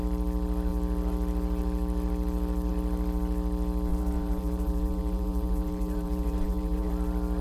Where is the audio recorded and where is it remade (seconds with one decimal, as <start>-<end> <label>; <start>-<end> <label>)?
0.0-3.9 recorded; 3.9-6.9 remade; 6.9-7.4 recorded